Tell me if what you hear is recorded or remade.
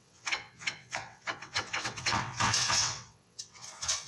remade